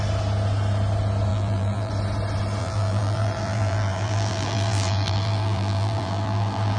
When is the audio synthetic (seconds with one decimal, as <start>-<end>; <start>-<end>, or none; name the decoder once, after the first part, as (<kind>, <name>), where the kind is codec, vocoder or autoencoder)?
1.3-1.9 (vocoder, BigVGAN v2); 2.6-6.8